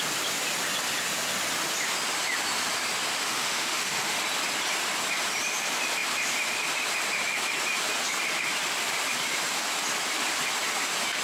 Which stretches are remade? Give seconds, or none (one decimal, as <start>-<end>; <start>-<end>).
3.1-4.2